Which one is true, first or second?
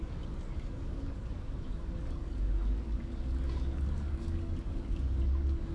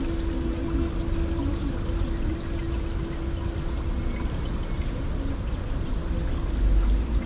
second